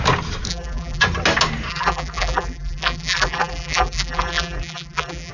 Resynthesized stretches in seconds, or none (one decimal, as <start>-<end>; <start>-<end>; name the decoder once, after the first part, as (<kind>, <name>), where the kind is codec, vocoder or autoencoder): 0.5-1.0 (vocoder, BigVGAN v2); 1.7-5.3